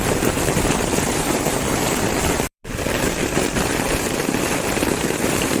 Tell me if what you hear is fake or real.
fake